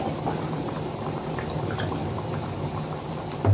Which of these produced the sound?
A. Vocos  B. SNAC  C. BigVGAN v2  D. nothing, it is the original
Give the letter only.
C